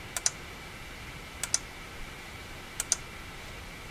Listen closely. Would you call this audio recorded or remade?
recorded